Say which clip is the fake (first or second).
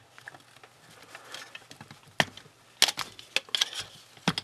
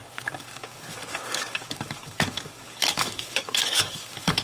second